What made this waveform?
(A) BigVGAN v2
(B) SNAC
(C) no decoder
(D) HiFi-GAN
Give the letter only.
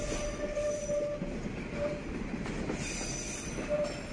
C